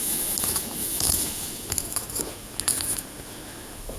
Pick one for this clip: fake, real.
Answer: fake